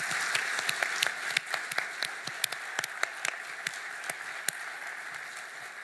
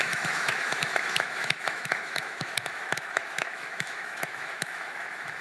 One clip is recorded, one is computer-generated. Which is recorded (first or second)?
first